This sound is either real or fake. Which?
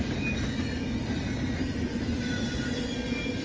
real